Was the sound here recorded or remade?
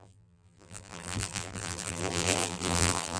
remade